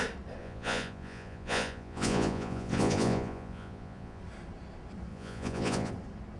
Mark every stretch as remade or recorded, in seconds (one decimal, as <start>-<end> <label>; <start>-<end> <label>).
0.0-0.4 recorded; 0.4-4.2 remade; 4.2-5.1 recorded; 5.1-5.9 remade; 5.9-6.4 recorded